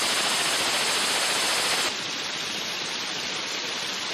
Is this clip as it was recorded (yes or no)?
yes